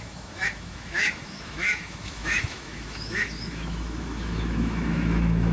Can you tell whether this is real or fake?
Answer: fake